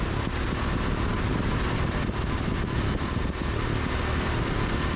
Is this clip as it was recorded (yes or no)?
yes